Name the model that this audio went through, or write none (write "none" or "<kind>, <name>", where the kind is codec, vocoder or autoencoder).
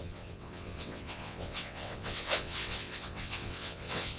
vocoder, WaveNeXt